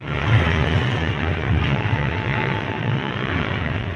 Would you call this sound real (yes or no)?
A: no